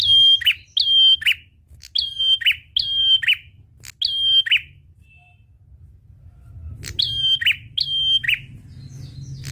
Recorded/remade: recorded